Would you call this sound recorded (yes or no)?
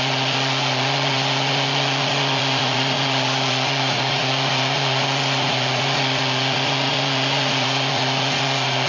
no